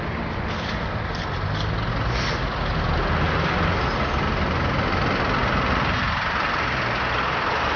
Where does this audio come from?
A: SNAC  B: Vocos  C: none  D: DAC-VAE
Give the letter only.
C